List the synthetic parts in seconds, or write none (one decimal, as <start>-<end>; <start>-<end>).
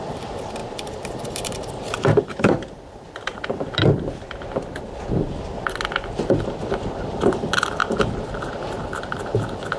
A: none